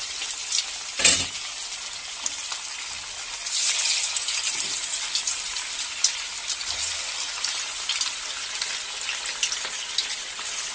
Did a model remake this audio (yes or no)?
no